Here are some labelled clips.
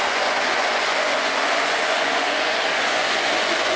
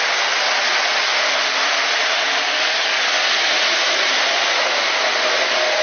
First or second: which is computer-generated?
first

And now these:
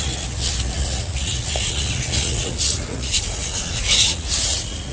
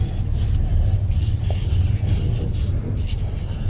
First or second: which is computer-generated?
first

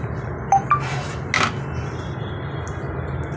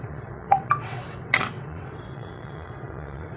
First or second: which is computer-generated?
second